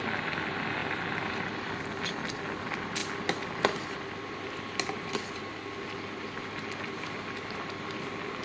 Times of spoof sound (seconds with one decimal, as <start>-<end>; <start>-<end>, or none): none

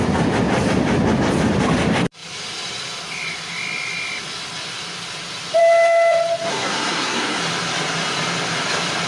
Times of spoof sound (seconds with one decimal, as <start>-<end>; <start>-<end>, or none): 6.5-7.4

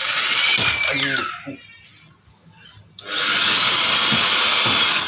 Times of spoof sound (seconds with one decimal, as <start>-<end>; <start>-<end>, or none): none

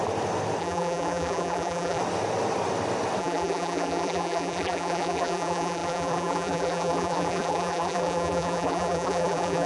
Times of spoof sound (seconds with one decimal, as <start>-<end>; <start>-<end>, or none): 0.6-2.0; 3.2-9.7

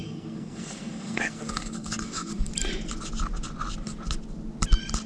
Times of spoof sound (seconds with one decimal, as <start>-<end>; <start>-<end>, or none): 0.0-2.5

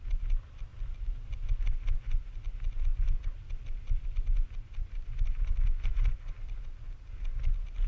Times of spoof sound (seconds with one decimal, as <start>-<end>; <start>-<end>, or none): 2.9-6.3

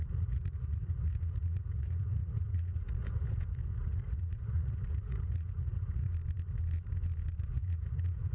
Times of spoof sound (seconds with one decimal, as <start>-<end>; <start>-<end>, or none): 0.0-6.1; 7.4-8.3

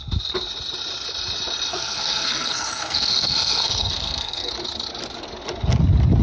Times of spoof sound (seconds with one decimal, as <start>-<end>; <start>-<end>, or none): 1.7-4.5